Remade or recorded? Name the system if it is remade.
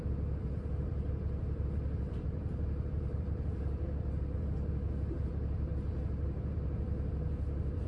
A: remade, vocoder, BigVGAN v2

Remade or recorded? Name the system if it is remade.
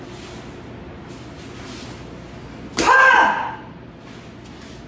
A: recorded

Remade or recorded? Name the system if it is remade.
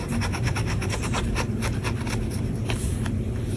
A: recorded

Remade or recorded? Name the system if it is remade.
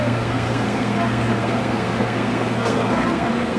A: remade, codec, SNAC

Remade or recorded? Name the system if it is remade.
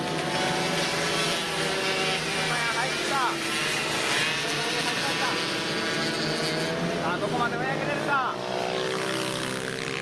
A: recorded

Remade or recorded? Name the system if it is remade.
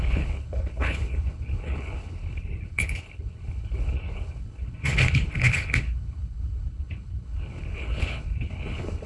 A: remade, codec, HILCodec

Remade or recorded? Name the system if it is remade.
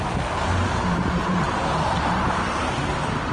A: recorded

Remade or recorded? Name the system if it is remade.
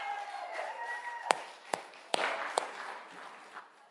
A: remade, vocoder, BigVGAN v2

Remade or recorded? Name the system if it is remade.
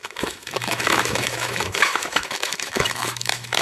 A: remade, autoencoder, DAC-VAE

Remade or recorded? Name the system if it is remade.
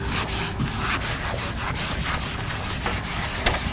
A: recorded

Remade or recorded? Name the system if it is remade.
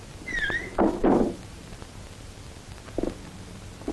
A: recorded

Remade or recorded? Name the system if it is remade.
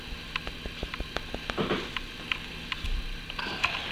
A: recorded